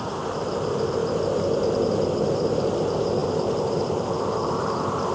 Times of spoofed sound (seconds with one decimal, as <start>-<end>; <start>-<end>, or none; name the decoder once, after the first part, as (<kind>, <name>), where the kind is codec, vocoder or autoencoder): 0.0-1.0 (vocoder, BigVGAN v2); 2.3-5.1